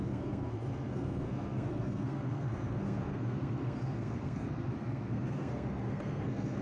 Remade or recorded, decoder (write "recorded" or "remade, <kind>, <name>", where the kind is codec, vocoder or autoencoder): remade, codec, SNAC